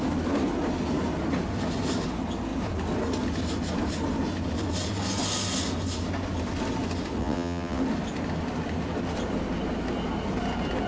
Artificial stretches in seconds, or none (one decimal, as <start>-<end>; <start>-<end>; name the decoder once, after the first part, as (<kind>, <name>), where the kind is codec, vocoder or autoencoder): 7.2-7.8 (vocoder, WaveNeXt)